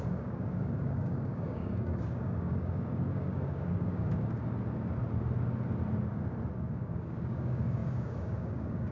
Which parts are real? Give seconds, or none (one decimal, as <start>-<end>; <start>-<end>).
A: 4.4-6.6